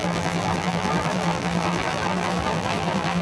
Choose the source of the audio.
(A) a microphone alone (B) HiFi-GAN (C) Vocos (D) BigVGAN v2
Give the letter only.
D